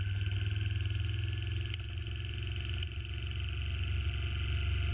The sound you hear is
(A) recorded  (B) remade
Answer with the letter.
A